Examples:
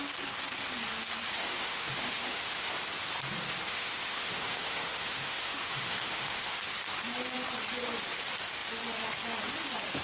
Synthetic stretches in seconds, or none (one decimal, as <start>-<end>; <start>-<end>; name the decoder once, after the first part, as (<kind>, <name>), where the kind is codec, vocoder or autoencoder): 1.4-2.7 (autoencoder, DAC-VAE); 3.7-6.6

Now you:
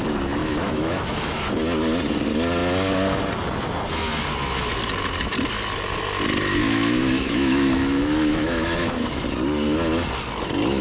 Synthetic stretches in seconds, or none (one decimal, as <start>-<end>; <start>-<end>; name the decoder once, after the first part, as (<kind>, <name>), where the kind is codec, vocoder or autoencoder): 0.4-1.5 (autoencoder, DAC-VAE); 6.5-9.1

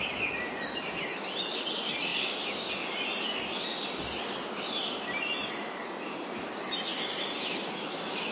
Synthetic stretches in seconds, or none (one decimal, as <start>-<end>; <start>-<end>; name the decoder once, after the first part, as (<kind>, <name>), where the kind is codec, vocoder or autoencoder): 2.1-2.7 (codec, DAC)

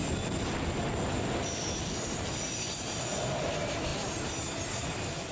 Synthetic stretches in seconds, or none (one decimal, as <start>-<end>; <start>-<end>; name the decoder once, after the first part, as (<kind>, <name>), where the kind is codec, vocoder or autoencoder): 0.0-5.3 (vocoder, BigVGAN v2)

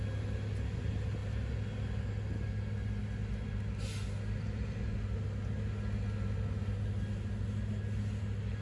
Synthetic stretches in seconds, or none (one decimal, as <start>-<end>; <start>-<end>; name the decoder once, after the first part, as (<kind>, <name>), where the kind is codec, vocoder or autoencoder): none

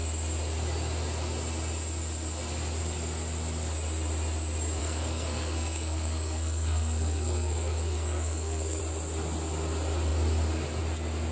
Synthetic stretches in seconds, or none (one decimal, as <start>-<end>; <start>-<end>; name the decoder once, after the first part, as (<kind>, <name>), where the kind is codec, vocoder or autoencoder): 4.8-8.8 (codec, SNAC)

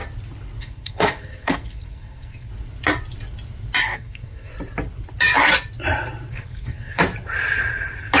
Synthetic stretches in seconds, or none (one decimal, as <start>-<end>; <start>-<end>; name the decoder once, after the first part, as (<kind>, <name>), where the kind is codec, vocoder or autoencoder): 0.6-2.5 (codec, SNAC); 3.8-4.5; 6.3-7.0